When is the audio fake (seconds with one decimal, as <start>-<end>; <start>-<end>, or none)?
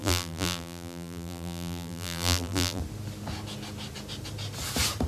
0.0-2.8